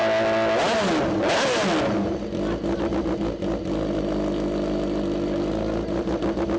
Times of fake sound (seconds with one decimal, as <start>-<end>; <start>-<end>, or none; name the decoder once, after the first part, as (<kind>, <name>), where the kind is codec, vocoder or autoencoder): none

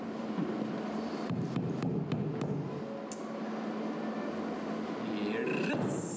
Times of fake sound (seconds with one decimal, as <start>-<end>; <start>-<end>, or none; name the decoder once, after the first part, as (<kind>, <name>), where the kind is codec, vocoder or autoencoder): 0.0-1.9 (vocoder, BigVGAN v2); 5.6-6.2

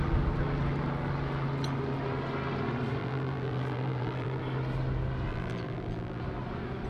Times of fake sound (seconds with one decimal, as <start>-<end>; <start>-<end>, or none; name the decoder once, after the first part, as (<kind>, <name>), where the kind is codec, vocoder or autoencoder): 3.0-4.4 (vocoder, BigVGAN v2); 5.3-6.2